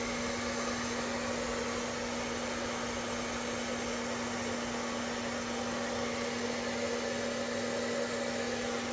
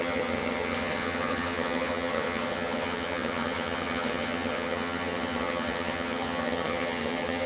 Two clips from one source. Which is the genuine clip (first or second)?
first